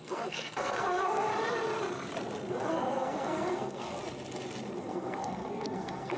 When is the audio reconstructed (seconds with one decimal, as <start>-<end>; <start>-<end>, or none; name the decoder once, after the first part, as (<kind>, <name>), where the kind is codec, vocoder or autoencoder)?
0.0-1.3 (codec, SNAC); 2.5-4.0; 4.8-6.2